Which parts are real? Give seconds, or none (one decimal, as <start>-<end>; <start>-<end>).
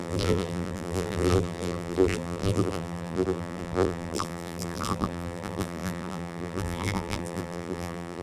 none